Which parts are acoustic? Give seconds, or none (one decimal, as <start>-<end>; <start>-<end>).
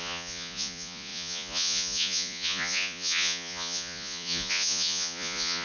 none